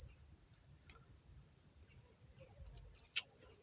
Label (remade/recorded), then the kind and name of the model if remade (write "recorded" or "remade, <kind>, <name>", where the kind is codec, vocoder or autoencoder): recorded